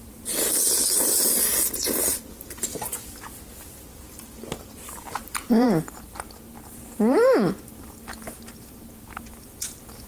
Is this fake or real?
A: fake